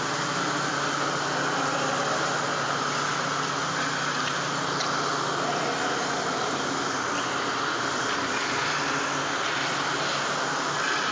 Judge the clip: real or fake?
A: real